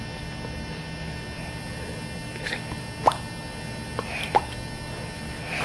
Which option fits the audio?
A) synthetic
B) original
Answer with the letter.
B